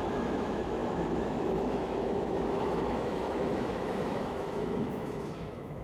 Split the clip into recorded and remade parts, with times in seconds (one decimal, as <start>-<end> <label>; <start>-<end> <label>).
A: 0.0-5.8 remade